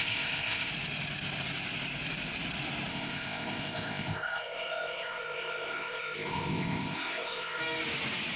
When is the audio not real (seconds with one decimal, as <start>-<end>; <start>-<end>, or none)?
0.0-0.7; 2.9-7.6